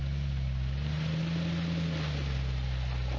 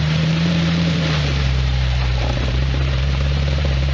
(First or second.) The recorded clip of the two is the first